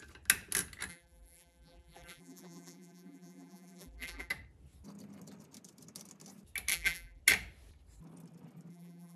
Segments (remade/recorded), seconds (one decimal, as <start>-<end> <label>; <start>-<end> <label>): 0.0-0.9 recorded; 0.9-4.3 remade; 4.3-6.7 recorded; 6.7-7.2 remade; 7.2-8.7 recorded; 8.7-9.2 remade